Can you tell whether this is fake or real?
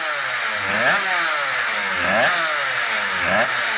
real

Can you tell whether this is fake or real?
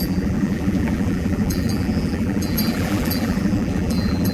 fake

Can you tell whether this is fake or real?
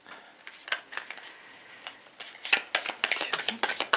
real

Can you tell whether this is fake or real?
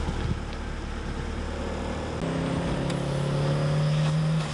real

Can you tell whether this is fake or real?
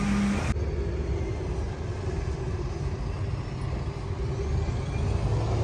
real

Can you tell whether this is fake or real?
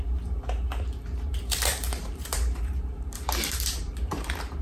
fake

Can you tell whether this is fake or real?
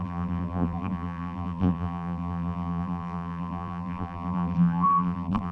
fake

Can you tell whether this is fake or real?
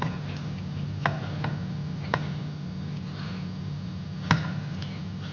real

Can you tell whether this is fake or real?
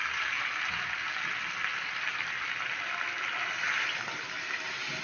real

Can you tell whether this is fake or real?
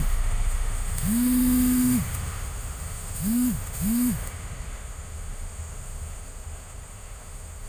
fake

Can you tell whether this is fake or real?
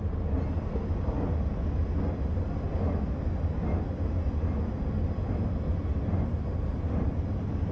real